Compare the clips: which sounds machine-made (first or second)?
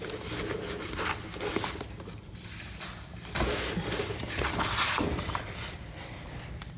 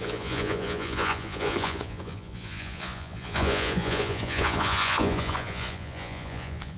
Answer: second